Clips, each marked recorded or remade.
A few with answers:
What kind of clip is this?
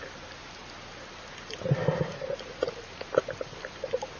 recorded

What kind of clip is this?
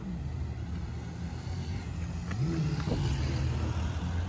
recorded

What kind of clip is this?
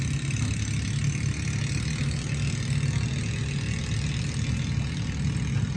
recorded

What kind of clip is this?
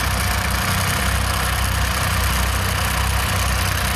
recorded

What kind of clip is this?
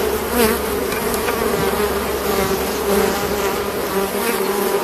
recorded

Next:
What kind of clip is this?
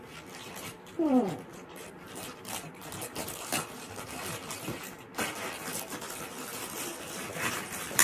remade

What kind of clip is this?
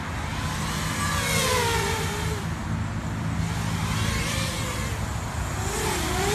recorded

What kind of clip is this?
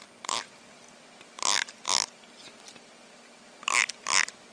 recorded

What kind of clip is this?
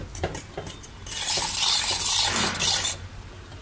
recorded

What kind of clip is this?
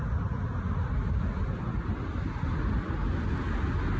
recorded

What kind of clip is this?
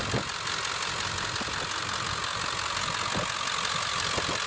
recorded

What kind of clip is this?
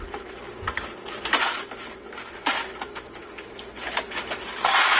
recorded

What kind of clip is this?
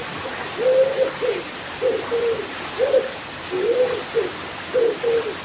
recorded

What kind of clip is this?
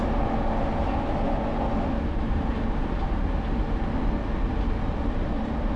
recorded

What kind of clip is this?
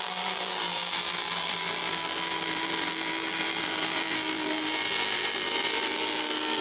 remade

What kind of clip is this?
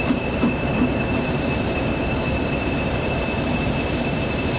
remade